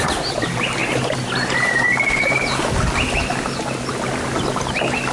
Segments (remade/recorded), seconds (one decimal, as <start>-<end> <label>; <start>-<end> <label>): 0.0-5.1 recorded